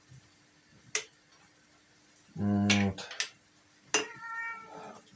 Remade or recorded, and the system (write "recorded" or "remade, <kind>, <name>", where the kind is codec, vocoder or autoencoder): recorded